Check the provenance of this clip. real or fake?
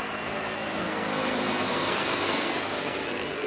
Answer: fake